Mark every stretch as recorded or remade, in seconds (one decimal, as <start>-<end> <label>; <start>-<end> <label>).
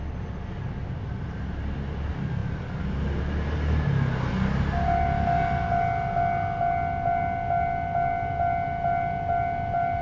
0.0-10.0 recorded